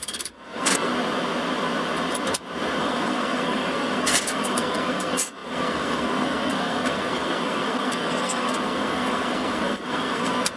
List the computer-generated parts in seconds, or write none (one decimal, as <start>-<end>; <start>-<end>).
0.0-0.9; 2.8-10.6